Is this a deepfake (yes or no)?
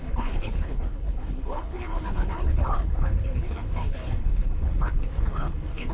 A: yes